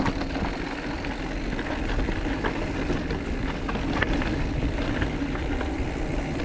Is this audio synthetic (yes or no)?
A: no